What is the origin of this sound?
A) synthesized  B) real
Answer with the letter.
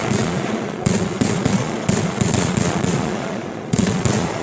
A